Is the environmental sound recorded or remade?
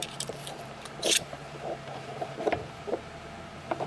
remade